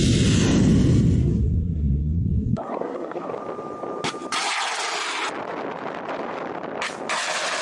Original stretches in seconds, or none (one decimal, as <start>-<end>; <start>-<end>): 0.0-1.2; 3.3-7.6